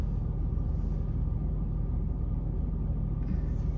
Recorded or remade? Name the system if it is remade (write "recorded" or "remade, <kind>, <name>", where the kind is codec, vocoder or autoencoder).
recorded